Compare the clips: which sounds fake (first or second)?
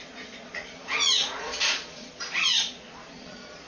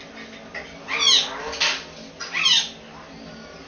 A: first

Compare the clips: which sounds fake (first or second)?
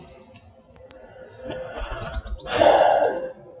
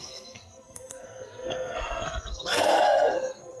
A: second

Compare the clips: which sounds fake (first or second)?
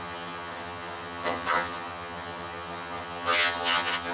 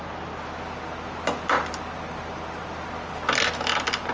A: first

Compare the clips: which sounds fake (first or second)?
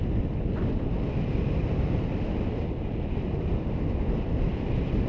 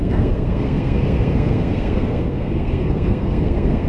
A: second